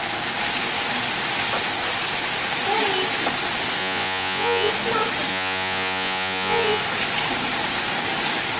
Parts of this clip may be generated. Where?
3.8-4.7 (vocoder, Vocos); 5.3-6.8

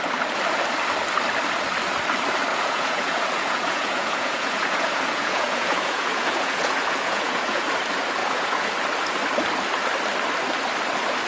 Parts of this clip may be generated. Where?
2.5-7.6 (vocoder, Vocos); 8.2-8.7

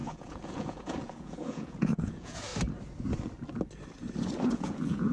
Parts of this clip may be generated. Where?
0.0-2.5 (vocoder, Vocos); 4.5-5.1

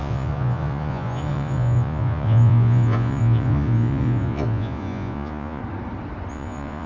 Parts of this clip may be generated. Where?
0.0-5.6 (vocoder, Vocos); 6.3-6.9